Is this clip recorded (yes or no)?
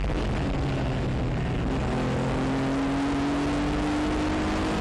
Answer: yes